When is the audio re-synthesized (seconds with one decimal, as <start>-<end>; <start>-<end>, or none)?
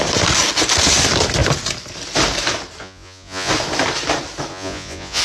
2.8-3.5; 4.5-5.2